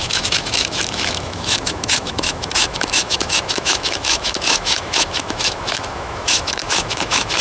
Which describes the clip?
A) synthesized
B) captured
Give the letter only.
A